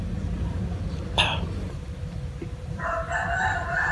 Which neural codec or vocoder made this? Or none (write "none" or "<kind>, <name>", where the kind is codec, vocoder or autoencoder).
vocoder, BigVGAN v2